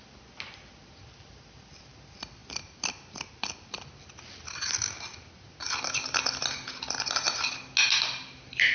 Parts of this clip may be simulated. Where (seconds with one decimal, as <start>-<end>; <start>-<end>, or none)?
none